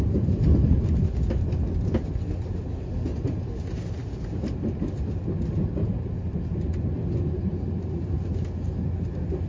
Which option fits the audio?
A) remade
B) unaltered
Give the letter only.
B